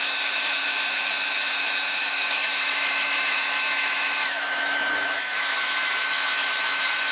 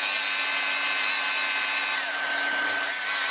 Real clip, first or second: second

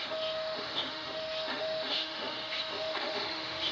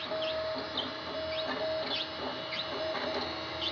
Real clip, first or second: second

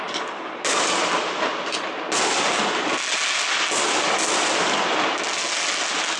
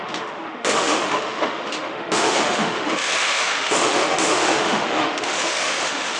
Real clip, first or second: first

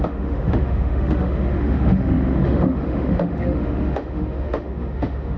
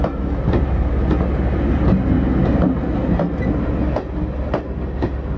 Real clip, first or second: second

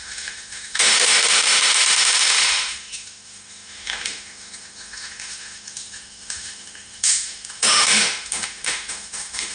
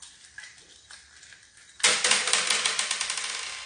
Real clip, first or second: second